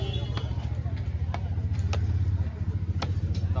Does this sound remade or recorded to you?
recorded